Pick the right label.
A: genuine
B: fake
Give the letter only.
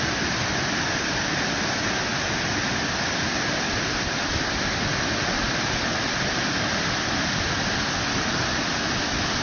A